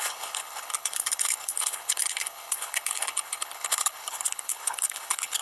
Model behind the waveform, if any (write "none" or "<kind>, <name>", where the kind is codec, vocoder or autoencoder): codec, HILCodec